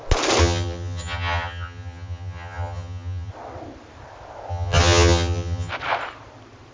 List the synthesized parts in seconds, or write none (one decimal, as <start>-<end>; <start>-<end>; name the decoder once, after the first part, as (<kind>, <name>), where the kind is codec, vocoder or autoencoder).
0.4-3.3 (vocoder, HiFi-GAN); 4.5-5.7